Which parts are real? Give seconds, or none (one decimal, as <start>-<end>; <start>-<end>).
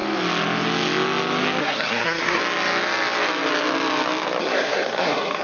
0.0-1.6; 2.4-4.4